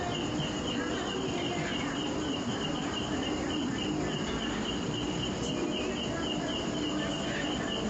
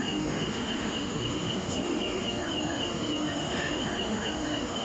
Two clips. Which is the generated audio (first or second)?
second